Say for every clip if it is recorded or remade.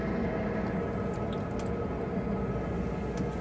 recorded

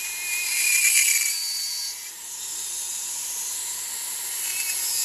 recorded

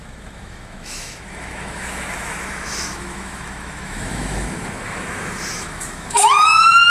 remade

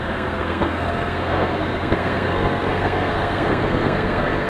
remade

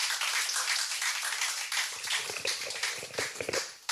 recorded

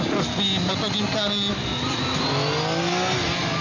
recorded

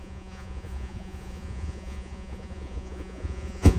remade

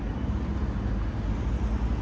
recorded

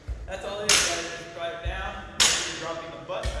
recorded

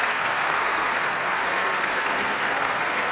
remade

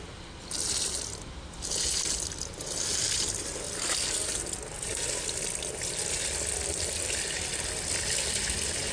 recorded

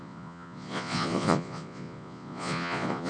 remade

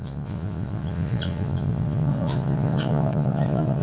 remade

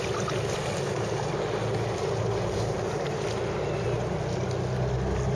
recorded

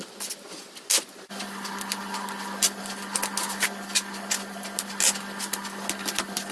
recorded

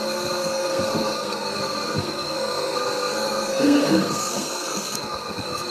remade